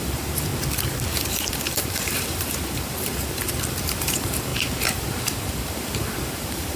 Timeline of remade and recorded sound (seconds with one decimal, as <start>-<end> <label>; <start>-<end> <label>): 0.0-0.5 remade; 0.5-1.5 recorded; 1.5-4.5 remade; 4.5-5.1 recorded; 5.1-6.8 remade